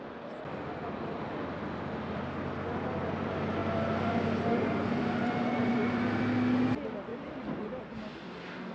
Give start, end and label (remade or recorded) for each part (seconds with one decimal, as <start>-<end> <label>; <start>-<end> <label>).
0.0-5.6 recorded; 5.6-6.2 remade; 6.2-7.1 recorded; 7.1-7.8 remade; 7.8-8.7 recorded

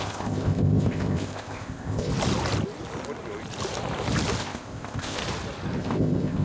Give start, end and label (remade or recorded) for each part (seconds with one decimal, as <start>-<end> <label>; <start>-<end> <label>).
0.0-2.1 remade; 2.1-4.4 recorded; 4.4-5.2 remade; 5.2-5.8 recorded; 5.8-6.4 remade